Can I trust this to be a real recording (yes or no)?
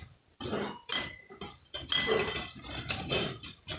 yes